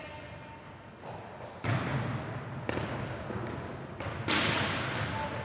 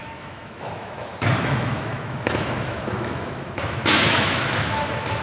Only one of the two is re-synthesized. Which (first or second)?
second